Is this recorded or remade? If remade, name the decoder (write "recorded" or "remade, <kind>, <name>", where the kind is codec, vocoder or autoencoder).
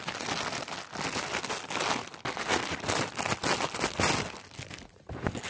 recorded